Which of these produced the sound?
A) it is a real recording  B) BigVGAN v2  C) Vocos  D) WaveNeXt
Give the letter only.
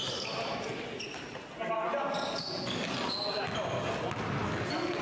A